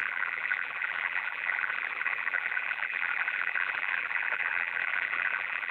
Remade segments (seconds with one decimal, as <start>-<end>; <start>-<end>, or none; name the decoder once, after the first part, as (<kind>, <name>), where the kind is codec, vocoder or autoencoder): 0.0-5.7 (vocoder, BigVGAN v2)